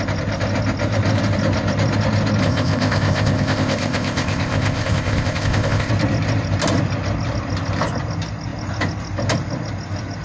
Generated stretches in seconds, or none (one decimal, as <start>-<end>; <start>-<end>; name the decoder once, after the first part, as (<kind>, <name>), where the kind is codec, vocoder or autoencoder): 2.4-5.9 (codec, ZipCodec)